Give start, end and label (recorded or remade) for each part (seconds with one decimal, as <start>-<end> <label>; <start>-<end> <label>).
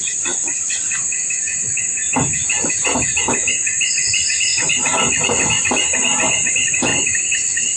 0.0-1.5 remade; 1.5-2.7 recorded; 2.7-4.5 remade; 4.5-6.5 recorded; 6.5-6.9 remade; 6.9-7.8 recorded